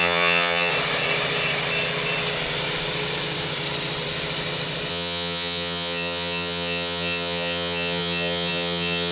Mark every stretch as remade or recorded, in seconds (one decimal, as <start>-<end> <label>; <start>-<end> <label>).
0.0-0.7 remade; 0.7-4.9 recorded; 4.9-9.1 remade